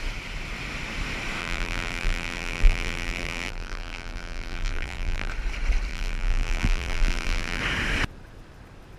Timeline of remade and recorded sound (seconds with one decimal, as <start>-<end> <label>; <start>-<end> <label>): 0.0-1.4 recorded; 1.4-5.3 remade; 5.3-5.9 recorded; 5.9-7.6 remade; 7.6-9.0 recorded